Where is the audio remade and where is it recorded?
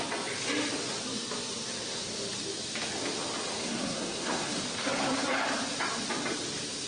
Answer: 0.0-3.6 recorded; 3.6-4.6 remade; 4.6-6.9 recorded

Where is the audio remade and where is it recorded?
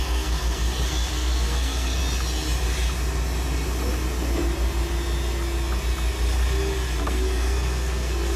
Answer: 0.0-2.0 remade; 2.0-7.0 recorded; 7.0-8.4 remade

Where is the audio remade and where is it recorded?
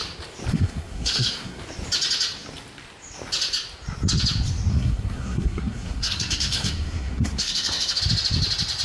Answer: 0.0-0.5 recorded; 0.5-1.6 remade; 1.6-4.7 recorded; 4.7-8.0 remade; 8.0-8.8 recorded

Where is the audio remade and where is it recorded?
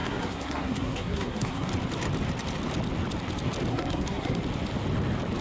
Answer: 0.0-1.7 remade; 1.7-3.7 recorded; 3.7-4.4 remade; 4.4-5.4 recorded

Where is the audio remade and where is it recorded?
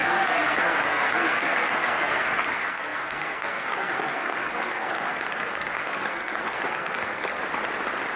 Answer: 0.0-7.4 remade; 7.4-8.2 recorded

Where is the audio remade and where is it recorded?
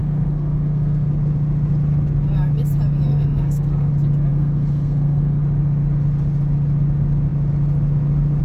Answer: 0.0-1.1 remade; 1.1-3.1 recorded; 3.1-3.9 remade; 3.9-4.3 recorded; 4.3-5.4 remade; 5.4-8.4 recorded